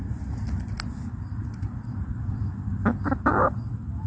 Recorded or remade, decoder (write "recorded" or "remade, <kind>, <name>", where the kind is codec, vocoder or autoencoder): recorded